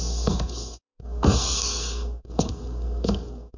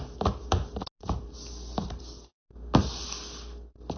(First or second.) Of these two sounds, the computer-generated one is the first